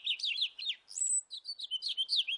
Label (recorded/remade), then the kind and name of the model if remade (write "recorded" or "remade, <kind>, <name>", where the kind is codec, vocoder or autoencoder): recorded